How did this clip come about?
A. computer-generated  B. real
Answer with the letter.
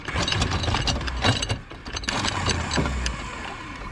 B